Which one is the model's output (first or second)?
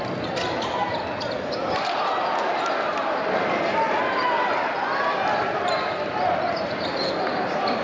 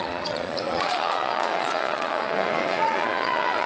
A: second